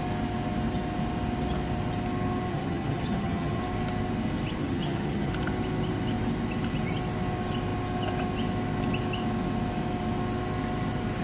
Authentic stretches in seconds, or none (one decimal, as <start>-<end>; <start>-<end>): 0.0-2.5; 3.6-4.6; 5.3-11.2